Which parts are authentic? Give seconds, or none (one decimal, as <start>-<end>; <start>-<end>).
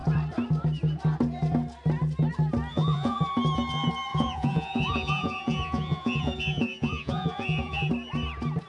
0.0-2.7; 3.2-4.1; 7.9-8.7